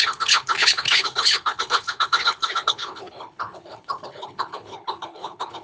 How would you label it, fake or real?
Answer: fake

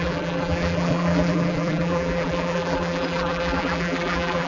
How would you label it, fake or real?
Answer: fake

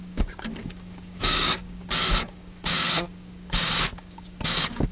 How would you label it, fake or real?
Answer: fake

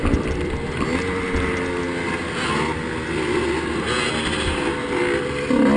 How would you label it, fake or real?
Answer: real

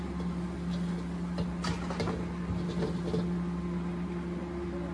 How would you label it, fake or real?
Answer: real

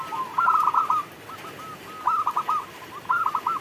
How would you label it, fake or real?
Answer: real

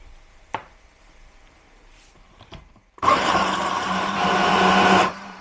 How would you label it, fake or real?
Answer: fake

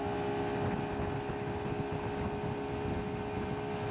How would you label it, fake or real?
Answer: real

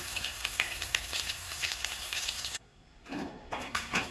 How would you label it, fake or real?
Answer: fake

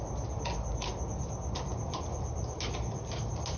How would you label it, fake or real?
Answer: real